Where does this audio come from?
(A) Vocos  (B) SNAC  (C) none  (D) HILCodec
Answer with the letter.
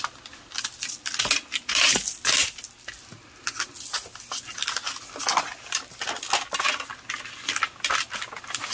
C